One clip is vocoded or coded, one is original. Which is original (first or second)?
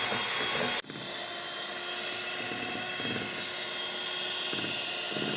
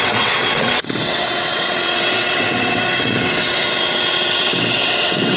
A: first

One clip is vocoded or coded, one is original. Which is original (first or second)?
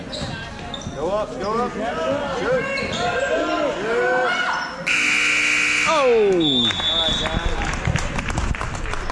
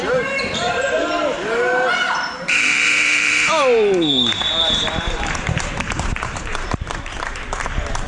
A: first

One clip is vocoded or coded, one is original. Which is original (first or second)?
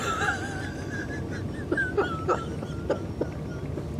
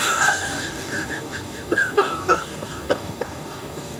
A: first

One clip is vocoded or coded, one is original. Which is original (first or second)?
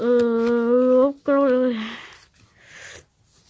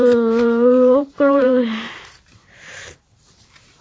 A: first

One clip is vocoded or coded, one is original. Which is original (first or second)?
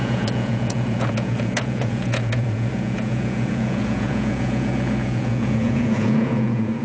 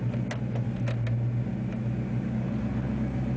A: second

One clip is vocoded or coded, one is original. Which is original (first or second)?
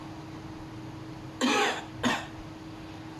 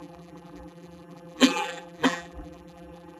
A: first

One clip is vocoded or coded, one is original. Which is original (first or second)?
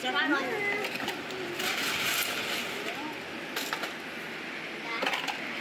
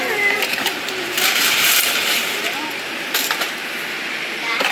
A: first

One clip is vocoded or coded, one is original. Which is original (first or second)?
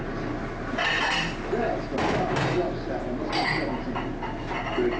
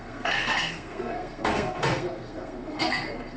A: first